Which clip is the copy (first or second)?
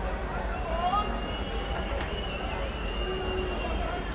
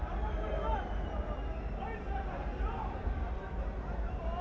second